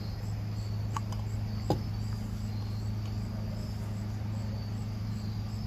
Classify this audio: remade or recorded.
recorded